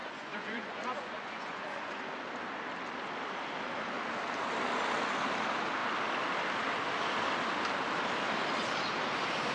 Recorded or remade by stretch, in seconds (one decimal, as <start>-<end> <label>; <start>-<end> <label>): 0.0-2.0 remade; 2.0-9.5 recorded